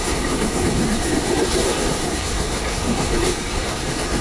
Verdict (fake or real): fake